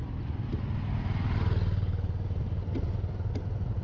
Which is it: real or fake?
real